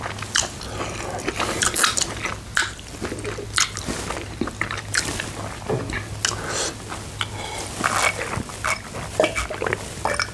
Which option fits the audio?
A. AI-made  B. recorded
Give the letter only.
B